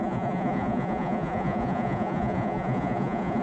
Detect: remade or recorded remade